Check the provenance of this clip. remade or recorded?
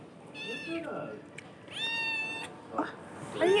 recorded